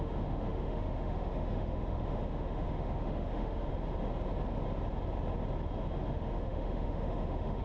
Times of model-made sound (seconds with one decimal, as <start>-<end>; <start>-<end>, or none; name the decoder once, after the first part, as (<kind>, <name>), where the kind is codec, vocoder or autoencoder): 0.0-3.7 (autoencoder, DAC-VAE); 6.1-7.6